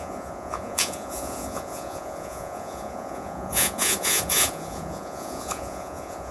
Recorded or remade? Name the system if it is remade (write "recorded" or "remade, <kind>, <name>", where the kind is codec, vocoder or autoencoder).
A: remade, vocoder, Vocos